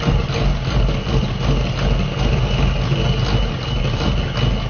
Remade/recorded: recorded